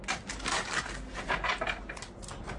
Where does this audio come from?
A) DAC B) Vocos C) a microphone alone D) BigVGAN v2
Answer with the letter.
C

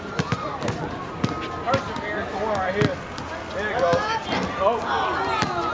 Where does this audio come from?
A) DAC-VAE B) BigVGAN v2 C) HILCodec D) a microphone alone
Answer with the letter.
D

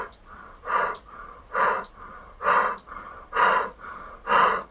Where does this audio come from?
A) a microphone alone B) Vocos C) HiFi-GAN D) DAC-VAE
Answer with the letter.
A